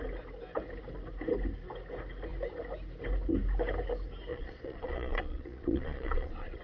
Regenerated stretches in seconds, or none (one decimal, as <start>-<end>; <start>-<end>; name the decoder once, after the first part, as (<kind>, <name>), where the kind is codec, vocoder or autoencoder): 4.3-6.6 (vocoder, Vocos)